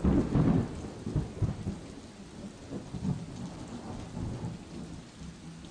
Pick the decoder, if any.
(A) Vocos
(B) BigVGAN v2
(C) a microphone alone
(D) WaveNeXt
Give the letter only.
C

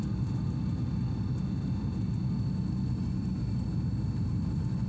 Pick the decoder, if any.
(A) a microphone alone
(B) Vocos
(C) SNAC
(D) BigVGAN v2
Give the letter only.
A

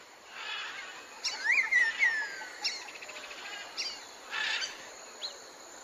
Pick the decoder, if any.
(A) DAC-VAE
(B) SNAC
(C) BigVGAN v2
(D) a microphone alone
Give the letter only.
D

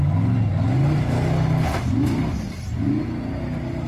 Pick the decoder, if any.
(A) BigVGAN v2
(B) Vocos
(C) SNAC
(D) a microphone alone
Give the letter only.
D